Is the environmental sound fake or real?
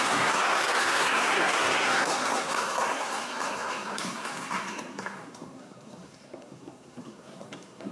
fake